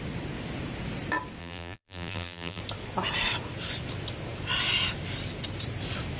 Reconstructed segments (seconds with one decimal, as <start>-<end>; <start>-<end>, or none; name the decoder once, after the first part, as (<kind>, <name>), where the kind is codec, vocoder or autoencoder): 1.4-2.6 (vocoder, BigVGAN v2)